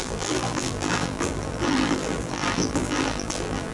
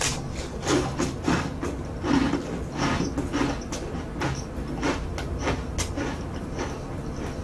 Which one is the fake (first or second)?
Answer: first